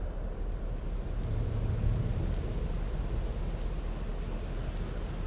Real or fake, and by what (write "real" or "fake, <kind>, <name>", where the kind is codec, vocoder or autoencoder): real